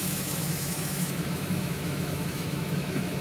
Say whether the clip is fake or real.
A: fake